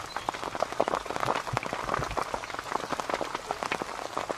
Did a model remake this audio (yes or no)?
no